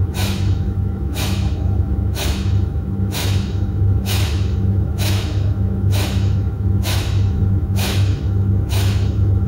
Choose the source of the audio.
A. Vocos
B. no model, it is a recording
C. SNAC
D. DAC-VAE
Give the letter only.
D